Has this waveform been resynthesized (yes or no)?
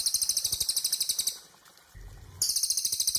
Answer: no